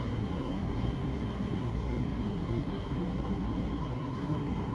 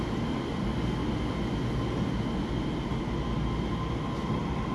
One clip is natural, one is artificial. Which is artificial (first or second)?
first